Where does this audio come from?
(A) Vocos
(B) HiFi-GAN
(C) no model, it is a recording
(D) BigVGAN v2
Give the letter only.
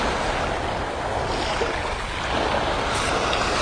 C